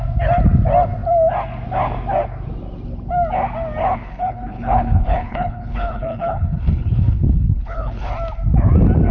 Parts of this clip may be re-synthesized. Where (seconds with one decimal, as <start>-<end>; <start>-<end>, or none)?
3.8-8.1